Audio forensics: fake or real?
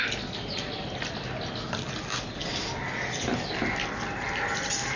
real